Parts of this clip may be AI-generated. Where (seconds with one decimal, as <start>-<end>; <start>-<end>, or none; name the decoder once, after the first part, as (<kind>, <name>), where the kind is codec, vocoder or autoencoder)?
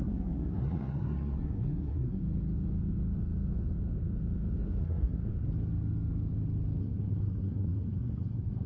0.0-2.2 (codec, SNAC); 4.8-5.2; 6.8-8.7